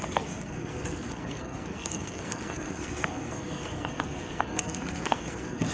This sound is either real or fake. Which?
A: fake